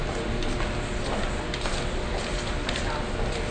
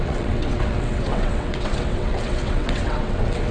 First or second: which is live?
first